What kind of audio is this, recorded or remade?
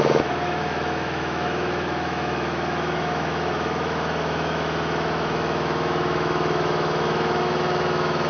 remade